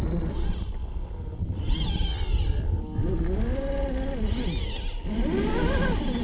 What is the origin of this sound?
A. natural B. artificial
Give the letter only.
A